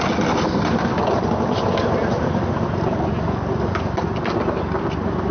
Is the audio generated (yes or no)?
no